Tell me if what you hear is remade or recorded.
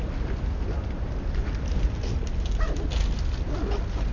recorded